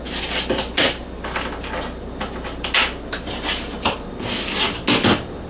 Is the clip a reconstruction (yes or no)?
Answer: no